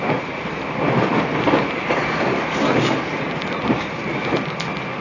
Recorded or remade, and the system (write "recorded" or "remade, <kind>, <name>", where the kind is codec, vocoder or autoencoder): recorded